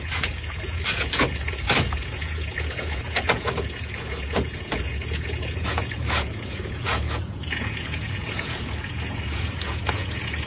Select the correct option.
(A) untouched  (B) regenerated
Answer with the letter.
B